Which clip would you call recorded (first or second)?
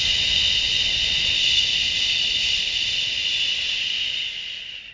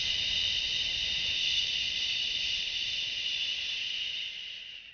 first